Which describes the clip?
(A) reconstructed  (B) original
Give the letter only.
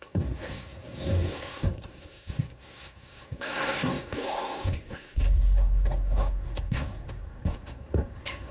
A